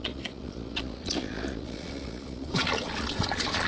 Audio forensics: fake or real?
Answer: fake